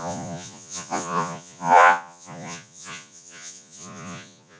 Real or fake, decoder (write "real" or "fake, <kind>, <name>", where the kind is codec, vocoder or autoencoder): fake, vocoder, Vocos